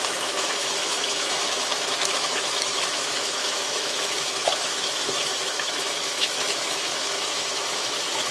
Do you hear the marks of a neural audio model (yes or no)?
yes